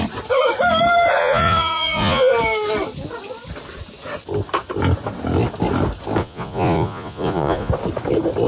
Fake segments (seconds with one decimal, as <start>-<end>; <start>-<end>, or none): 1.2-2.3; 6.2-7.7